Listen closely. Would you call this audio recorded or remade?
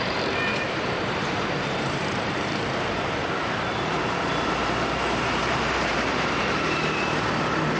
remade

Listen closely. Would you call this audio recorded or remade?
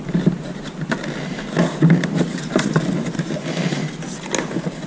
recorded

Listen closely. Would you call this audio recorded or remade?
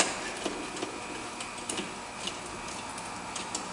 recorded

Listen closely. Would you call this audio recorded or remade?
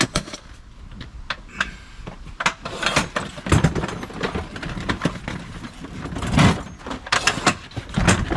recorded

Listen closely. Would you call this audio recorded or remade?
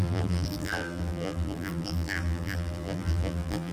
remade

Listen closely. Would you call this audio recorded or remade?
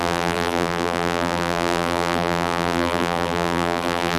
remade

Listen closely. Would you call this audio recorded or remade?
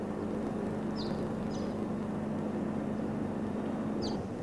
recorded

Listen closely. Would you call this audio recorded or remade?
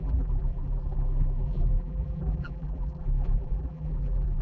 remade